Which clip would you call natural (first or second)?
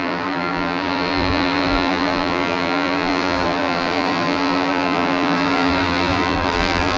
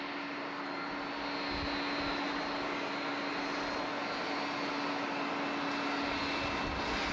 second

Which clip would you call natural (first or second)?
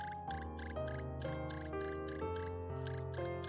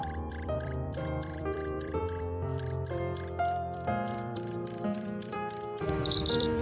first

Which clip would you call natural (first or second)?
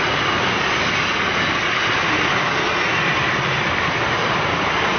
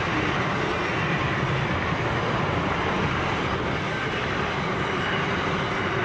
second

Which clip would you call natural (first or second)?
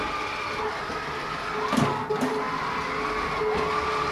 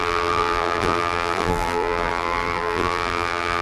first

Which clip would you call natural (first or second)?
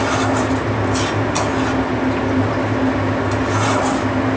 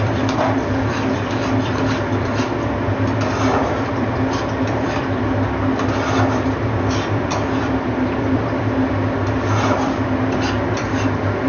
first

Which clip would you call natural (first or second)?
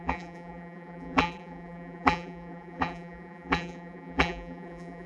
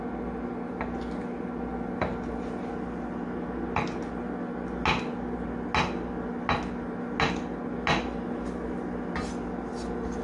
second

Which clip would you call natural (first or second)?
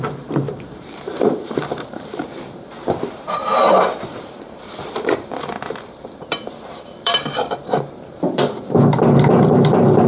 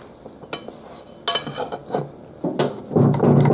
second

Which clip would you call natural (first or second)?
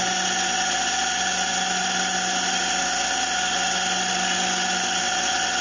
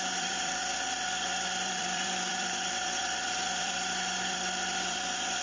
first